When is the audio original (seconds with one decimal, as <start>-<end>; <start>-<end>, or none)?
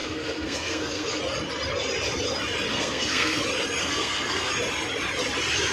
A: 1.2-2.7; 3.4-3.8; 4.5-5.7